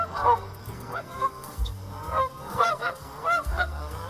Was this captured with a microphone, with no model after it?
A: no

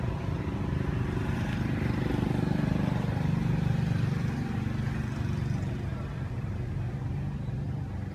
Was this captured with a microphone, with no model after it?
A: yes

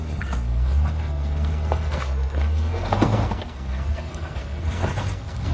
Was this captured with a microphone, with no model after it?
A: no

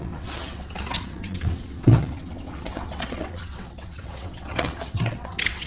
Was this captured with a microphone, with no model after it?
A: no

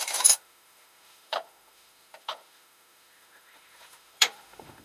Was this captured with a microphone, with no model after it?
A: no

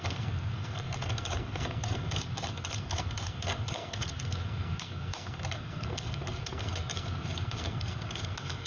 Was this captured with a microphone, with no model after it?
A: no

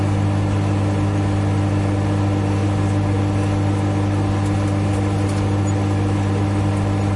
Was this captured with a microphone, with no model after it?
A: yes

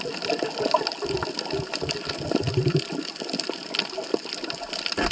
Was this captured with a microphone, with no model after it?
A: yes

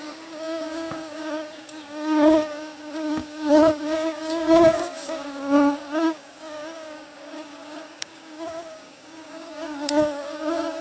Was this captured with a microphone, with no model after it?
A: no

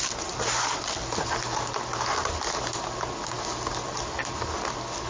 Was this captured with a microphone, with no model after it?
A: yes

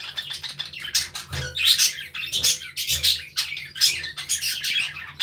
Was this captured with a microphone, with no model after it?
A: yes